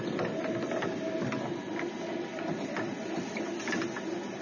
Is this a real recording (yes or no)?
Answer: yes